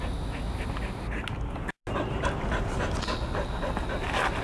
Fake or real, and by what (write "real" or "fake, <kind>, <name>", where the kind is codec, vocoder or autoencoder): real